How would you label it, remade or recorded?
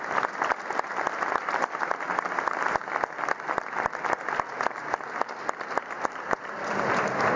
recorded